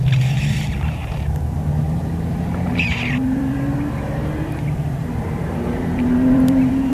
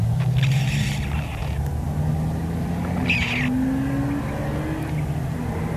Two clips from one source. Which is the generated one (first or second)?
first